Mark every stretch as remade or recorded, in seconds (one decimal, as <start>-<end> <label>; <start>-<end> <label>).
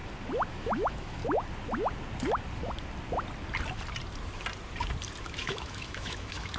0.0-0.5 recorded; 0.5-1.2 remade; 1.2-5.2 recorded; 5.2-6.6 remade